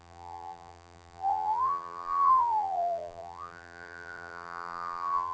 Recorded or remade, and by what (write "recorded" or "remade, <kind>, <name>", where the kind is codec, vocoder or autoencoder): remade, vocoder, BigVGAN v2